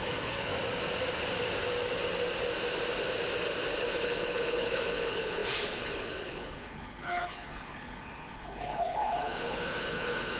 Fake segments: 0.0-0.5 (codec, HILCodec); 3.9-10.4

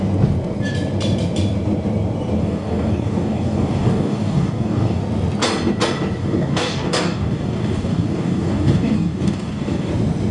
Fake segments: 2.4-5.0 (codec, DAC); 6.2-9.9

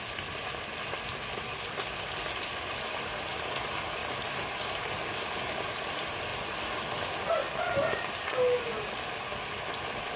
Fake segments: none

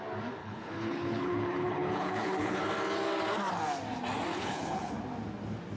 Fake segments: 0.4-2.6 (codec, HILCodec); 4.3-4.9

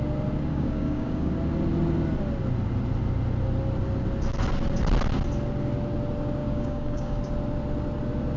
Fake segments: 0.5-1.3 (codec, DAC); 6.4-7.2